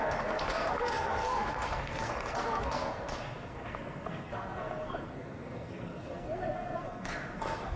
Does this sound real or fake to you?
fake